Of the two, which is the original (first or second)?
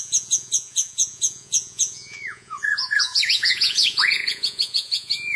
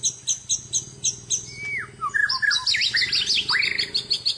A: second